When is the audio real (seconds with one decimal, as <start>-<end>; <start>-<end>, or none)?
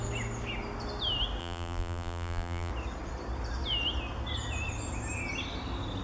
0.0-1.4; 2.7-6.0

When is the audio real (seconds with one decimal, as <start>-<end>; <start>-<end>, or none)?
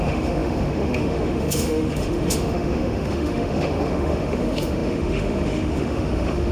none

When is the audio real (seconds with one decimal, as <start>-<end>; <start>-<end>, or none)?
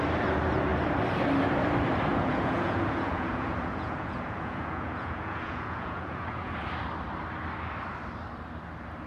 0.0-2.1; 6.5-9.1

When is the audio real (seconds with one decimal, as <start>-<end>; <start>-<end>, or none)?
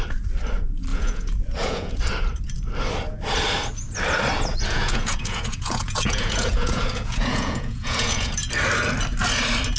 0.0-0.9; 2.0-4.5; 8.5-9.8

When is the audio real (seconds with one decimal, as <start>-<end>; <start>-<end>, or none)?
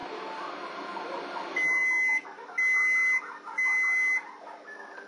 0.0-5.1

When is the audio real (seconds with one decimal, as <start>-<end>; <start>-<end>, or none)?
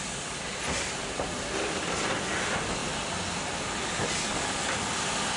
0.0-5.4